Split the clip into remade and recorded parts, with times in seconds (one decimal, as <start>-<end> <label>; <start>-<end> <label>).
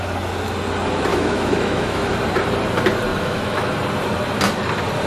0.0-1.1 recorded; 1.1-2.2 remade; 2.2-3.1 recorded; 3.1-3.7 remade; 3.7-5.1 recorded